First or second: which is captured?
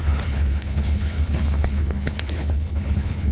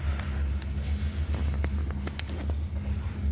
second